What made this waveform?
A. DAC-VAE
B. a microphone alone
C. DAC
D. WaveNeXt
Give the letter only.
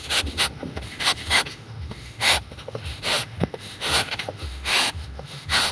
A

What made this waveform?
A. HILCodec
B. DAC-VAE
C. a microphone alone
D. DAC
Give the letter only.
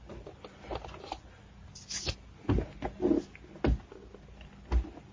C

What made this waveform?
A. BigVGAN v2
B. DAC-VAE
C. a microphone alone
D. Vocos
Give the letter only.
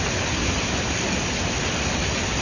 C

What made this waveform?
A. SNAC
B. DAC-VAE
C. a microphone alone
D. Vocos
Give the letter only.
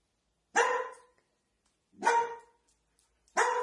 C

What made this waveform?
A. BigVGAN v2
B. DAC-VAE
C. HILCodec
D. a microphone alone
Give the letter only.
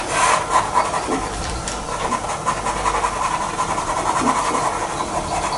D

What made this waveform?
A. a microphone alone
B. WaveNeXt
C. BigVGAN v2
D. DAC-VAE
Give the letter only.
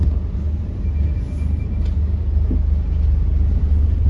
A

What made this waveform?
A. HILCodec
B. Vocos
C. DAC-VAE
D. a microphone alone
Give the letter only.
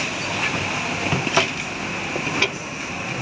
D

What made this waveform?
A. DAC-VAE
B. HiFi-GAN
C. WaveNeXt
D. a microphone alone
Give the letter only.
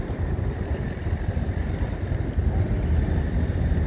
D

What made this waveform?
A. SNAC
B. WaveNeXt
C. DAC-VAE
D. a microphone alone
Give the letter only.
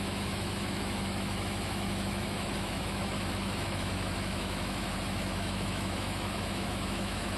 C